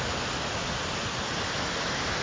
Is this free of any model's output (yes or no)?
yes